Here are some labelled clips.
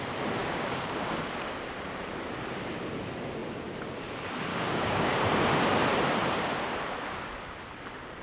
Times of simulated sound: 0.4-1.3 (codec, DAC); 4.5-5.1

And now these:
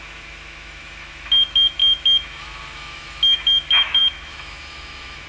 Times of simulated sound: 0.0-5.3 (autoencoder, DAC-VAE)